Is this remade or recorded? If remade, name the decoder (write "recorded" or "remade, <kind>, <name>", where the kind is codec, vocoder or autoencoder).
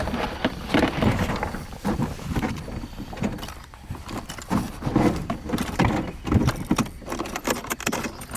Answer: remade, vocoder, BigVGAN v2